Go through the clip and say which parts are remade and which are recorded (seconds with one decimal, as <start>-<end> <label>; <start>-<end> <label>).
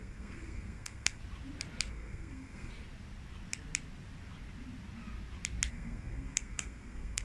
0.0-1.2 remade; 1.2-1.9 recorded; 1.9-2.7 remade; 2.7-5.7 recorded; 5.7-7.2 remade